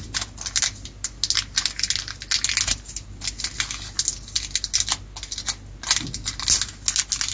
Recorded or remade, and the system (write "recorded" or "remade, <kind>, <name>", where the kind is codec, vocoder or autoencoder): recorded